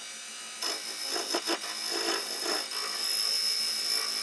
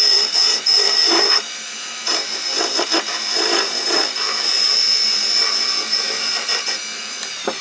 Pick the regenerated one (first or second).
second